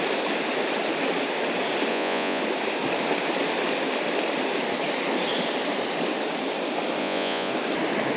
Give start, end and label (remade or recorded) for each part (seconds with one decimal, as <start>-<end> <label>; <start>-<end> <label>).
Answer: 0.0-1.9 recorded; 1.9-2.4 remade; 2.4-7.0 recorded; 7.0-7.5 remade; 7.5-8.2 recorded